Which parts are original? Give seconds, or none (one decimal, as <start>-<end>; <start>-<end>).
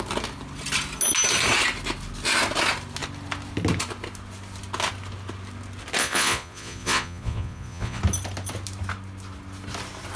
0.0-6.0; 8.0-10.2